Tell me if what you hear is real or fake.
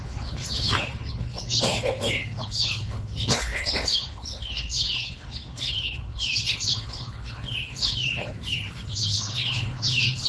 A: fake